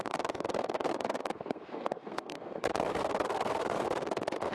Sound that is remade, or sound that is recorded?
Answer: remade